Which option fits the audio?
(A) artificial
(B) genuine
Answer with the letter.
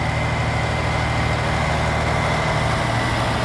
B